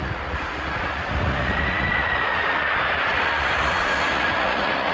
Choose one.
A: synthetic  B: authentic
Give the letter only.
A